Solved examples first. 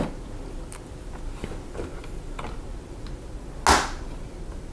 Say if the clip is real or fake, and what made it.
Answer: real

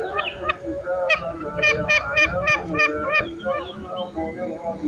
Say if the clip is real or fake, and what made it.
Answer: fake, autoencoder, DAC-VAE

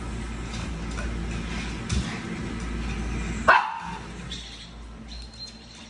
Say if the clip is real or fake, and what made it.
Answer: real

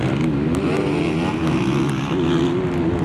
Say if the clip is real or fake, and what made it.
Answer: real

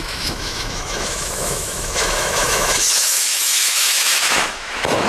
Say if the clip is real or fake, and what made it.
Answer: fake, autoencoder, DAC-VAE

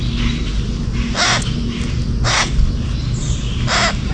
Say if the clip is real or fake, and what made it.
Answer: real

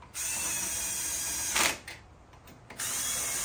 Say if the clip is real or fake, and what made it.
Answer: real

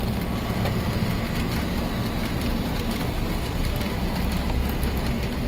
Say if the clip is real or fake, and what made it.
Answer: real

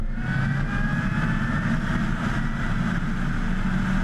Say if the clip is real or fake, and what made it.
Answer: real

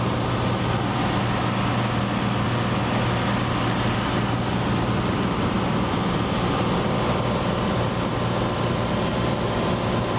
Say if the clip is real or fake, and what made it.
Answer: real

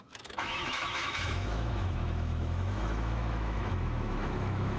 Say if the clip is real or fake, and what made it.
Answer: fake, autoencoder, DAC-VAE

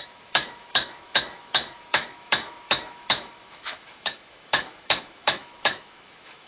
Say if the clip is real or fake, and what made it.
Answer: fake, autoencoder, DAC-VAE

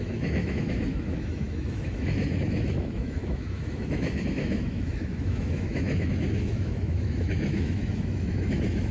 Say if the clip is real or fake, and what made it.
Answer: fake, autoencoder, DAC-VAE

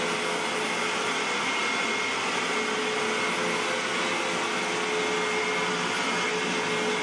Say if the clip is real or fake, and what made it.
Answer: real